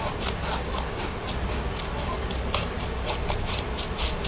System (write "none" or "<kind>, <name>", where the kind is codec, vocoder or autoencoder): none